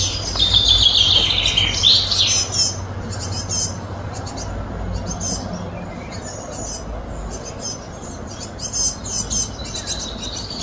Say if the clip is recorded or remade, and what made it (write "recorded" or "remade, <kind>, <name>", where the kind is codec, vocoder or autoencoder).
recorded